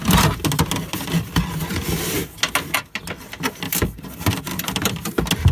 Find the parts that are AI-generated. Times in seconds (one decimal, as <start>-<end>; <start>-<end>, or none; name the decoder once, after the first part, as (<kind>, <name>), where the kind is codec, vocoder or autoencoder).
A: none